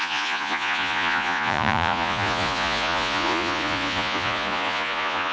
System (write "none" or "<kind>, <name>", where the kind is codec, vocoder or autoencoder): vocoder, Vocos